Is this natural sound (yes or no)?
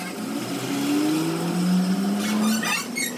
yes